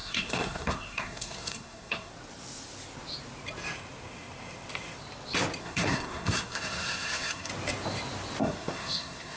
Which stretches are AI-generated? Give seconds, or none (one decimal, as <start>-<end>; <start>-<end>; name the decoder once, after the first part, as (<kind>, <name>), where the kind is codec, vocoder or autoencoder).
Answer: 0.0-2.1 (codec, SNAC); 5.6-7.5; 8.4-9.4